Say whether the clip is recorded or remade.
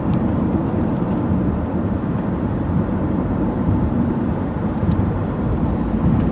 remade